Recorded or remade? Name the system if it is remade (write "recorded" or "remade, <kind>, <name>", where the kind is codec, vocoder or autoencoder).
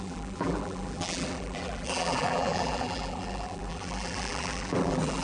remade, vocoder, BigVGAN v2